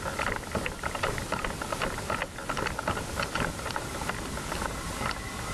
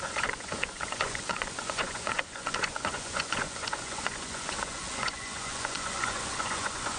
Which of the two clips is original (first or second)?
first